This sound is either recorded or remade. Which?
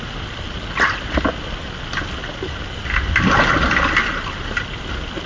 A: recorded